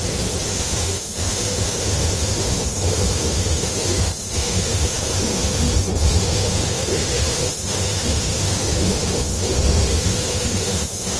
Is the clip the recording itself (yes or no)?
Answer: no